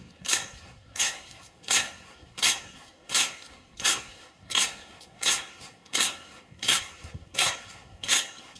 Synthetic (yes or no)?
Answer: yes